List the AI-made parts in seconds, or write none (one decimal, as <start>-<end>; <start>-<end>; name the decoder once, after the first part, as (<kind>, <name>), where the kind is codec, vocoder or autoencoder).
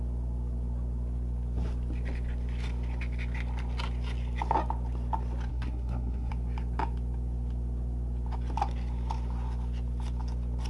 5.5-6.3 (codec, SNAC)